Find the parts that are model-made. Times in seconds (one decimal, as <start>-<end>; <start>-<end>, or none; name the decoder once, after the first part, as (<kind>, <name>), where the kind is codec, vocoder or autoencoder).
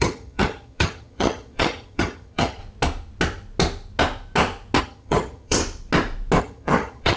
0.0-2.6 (vocoder, HiFi-GAN); 4.8-5.6; 6.4-7.2